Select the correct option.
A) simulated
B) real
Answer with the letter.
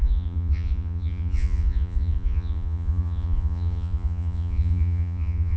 A